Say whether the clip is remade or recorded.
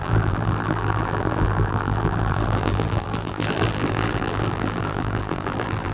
remade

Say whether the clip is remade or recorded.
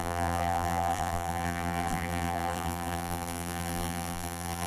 remade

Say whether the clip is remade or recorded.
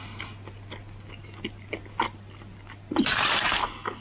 recorded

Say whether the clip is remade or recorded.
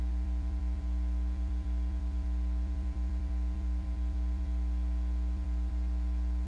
remade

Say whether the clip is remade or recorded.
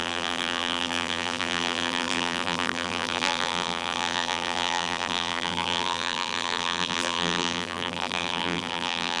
remade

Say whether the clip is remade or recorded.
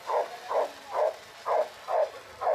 recorded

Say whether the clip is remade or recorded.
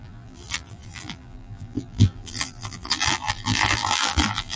remade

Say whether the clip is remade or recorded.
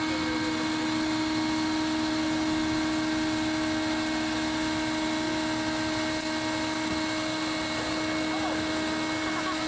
recorded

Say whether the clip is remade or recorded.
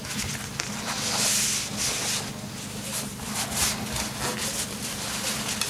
recorded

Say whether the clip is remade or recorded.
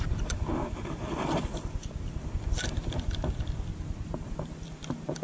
remade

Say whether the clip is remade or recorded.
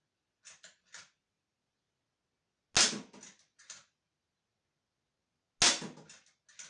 recorded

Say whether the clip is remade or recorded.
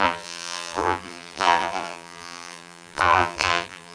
remade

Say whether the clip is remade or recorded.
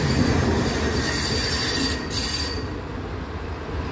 recorded